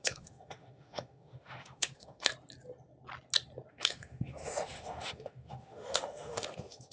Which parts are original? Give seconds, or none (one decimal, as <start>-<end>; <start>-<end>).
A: 2.3-3.7